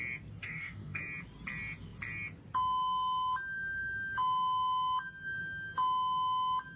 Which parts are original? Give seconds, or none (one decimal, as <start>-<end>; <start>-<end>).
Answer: 0.0-0.4; 1.0-6.8